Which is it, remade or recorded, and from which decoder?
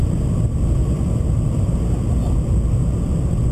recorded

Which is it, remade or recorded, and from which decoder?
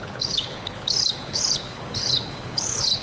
remade, codec, HILCodec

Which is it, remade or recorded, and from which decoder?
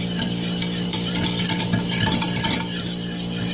recorded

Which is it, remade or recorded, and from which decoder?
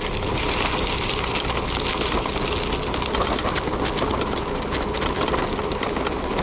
recorded